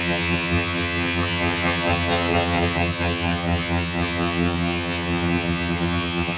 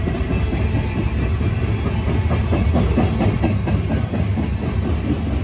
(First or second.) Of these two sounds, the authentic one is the second